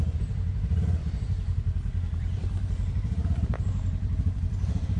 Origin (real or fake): real